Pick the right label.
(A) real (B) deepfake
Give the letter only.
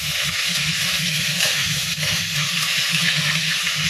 B